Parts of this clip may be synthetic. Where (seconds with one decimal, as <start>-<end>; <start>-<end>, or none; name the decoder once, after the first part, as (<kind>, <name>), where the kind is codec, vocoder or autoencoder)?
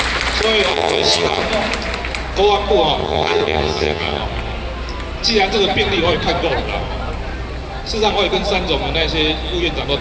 0.7-1.4 (vocoder, HiFi-GAN); 3.0-4.2